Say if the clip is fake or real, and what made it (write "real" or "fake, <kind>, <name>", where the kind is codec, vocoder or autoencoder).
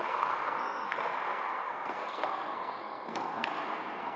fake, codec, SNAC